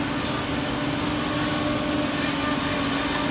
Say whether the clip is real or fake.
real